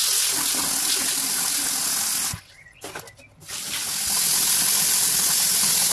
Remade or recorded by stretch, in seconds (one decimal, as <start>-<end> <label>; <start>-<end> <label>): 0.0-5.9 recorded